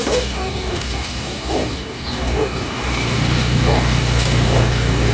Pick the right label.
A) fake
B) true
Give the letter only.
A